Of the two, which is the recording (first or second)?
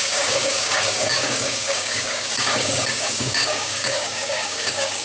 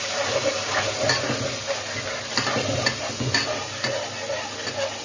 second